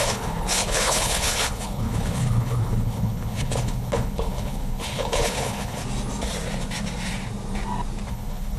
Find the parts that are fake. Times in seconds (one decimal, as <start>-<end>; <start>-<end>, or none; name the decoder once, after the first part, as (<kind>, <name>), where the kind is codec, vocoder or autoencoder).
0.0-5.8 (codec, HILCodec); 8.1-8.6